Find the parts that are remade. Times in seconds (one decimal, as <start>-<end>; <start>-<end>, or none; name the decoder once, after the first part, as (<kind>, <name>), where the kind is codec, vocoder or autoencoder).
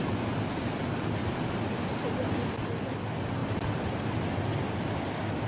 none